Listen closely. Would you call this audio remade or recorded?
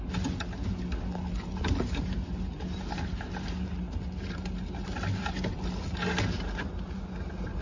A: recorded